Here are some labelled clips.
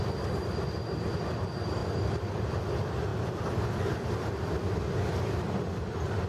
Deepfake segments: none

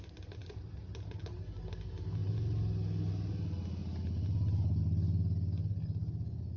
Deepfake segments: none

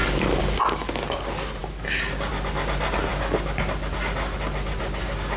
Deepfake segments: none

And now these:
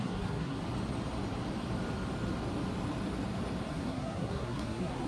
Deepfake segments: 0.0-0.6 (codec, SNAC); 3.7-5.1